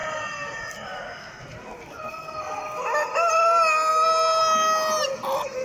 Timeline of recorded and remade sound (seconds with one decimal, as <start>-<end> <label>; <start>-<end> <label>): 0.0-5.6 recorded